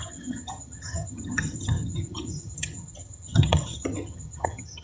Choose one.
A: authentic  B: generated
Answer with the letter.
B